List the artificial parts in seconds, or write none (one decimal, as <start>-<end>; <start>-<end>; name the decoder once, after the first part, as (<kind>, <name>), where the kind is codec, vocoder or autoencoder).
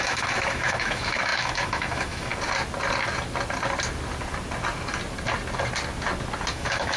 0.0-2.3 (autoencoder, DAC-VAE); 6.5-7.0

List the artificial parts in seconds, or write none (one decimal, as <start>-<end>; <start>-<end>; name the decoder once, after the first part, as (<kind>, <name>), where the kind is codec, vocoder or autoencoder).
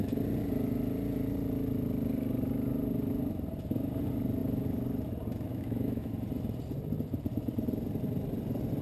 5.5-6.1 (autoencoder, DAC-VAE)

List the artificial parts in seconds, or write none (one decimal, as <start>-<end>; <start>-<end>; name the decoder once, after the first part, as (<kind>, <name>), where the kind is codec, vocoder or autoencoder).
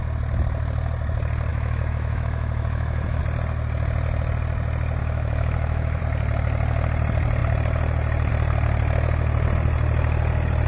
1.5-3.2 (autoencoder, DAC-VAE); 5.0-6.0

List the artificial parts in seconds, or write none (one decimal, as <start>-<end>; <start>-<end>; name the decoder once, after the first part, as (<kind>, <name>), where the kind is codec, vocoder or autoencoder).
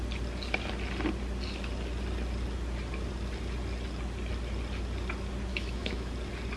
5.5-6.1 (autoencoder, DAC-VAE)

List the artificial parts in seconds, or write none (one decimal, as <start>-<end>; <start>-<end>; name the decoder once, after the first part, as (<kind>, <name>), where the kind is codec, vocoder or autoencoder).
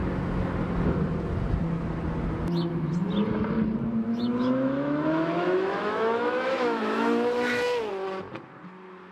4.1-7.9 (autoencoder, DAC-VAE)